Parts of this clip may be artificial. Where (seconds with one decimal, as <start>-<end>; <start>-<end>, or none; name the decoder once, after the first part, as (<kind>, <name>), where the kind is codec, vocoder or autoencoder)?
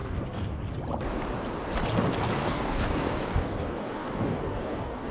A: 0.0-0.6 (codec, DAC); 2.4-5.1